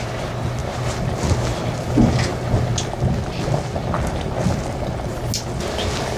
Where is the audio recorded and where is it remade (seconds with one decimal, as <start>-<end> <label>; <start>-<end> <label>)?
0.0-6.2 recorded